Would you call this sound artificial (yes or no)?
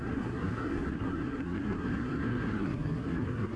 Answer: yes